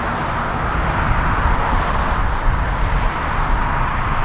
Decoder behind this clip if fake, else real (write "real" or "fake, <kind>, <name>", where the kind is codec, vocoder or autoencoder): real